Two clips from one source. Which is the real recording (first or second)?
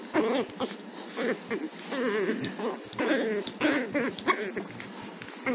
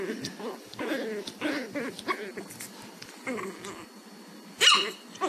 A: first